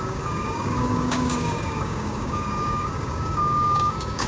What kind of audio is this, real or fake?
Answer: fake